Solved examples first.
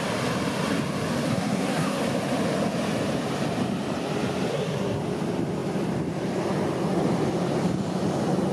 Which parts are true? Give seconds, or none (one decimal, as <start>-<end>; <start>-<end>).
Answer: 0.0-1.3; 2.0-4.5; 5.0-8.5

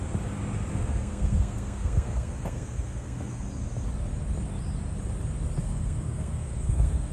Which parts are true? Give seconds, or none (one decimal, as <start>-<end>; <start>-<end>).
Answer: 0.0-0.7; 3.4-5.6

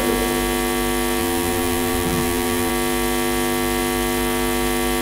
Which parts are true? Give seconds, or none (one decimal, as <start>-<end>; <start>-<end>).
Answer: 0.0-1.2; 2.7-5.0

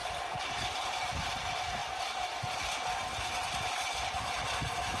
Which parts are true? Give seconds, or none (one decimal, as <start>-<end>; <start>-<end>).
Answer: 0.0-5.0

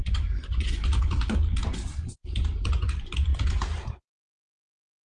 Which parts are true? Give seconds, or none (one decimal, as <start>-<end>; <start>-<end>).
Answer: 0.9-5.1

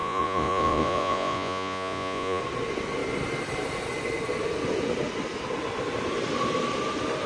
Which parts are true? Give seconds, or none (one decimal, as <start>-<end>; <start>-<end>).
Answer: 2.4-7.3

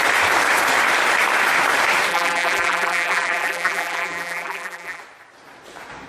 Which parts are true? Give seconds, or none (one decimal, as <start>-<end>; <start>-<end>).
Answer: 0.0-2.1; 5.0-6.1